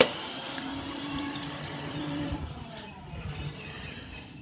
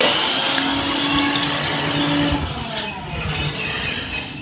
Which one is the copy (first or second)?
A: first